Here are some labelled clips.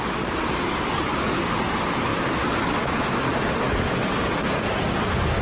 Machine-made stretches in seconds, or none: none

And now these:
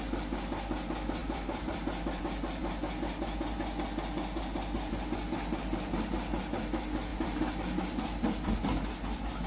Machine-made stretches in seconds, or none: 1.2-2.2 (vocoder, BigVGAN v2); 7.1-7.6

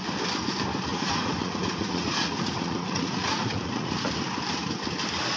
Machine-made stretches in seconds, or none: 0.9-4.1 (vocoder, Vocos)

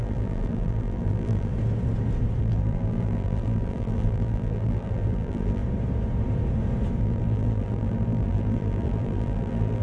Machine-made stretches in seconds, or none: 0.0-1.5 (vocoder, BigVGAN v2); 2.4-5.6; 7.0-9.8

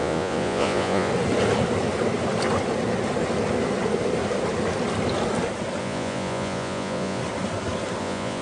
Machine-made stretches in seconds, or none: 0.0-1.1 (vocoder, Vocos); 5.8-7.2; 8.0-8.4

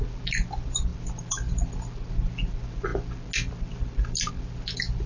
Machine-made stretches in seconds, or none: none

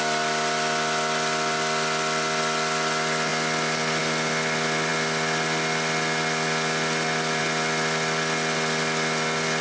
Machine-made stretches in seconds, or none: none